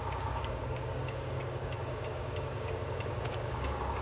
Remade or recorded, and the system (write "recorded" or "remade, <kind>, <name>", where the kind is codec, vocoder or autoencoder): remade, codec, DAC